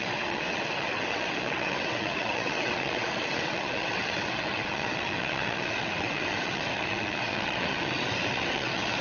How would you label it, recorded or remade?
remade